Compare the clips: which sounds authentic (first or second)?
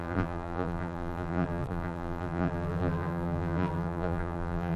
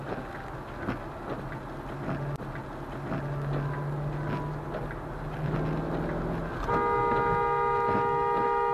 second